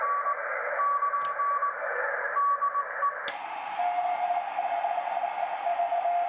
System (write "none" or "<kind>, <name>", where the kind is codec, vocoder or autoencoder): none